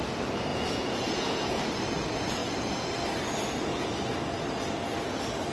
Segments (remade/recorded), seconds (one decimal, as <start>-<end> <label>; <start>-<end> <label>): 0.0-0.5 recorded; 0.5-1.6 remade; 1.6-5.5 recorded